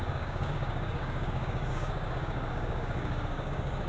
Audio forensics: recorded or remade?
remade